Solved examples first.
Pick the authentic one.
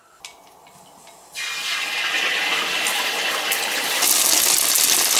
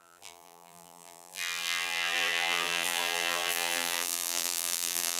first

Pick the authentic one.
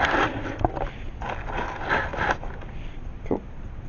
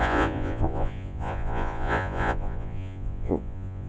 first